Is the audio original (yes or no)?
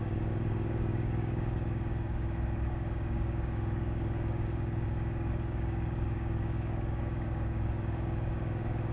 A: no